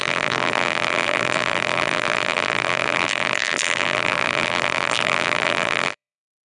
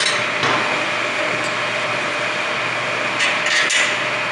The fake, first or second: first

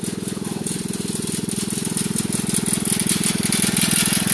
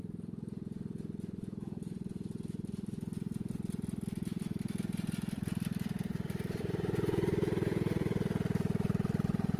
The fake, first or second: second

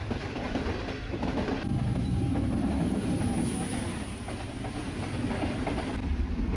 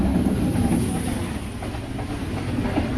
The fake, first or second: first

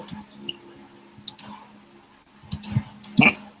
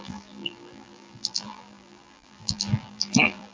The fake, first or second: second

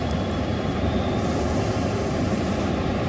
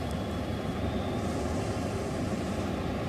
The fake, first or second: first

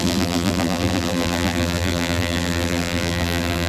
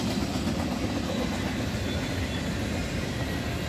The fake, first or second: first